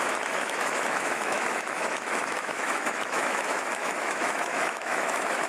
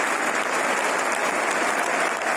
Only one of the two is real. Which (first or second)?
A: second